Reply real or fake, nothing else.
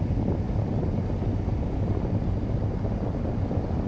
real